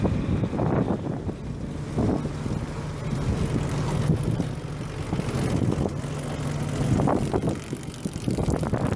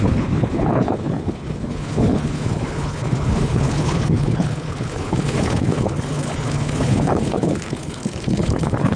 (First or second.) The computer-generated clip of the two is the second